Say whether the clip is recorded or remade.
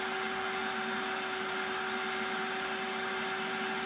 recorded